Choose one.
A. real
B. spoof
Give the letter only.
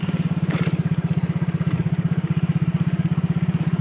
B